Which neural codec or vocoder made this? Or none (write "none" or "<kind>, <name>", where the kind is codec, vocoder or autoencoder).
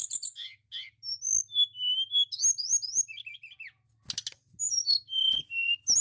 none